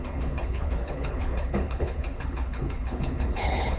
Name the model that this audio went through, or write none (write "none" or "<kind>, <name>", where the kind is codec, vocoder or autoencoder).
codec, HILCodec